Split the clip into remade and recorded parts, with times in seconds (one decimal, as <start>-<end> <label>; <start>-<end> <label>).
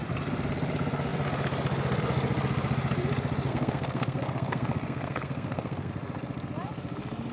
0.0-3.5 recorded; 3.5-5.9 remade; 5.9-7.3 recorded